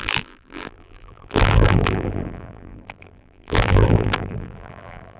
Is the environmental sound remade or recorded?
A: remade